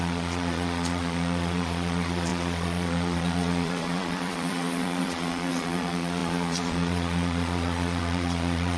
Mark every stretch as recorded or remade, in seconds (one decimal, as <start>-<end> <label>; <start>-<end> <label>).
0.0-8.8 remade